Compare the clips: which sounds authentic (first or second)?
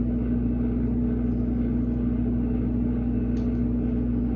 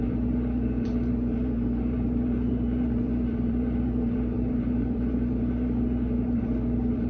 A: first